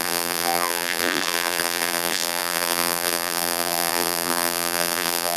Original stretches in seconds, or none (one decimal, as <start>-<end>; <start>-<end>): none